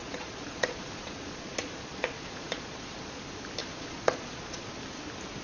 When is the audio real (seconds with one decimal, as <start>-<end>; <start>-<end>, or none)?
3.2-3.6; 4.7-5.4